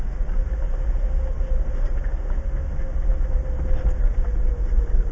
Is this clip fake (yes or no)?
no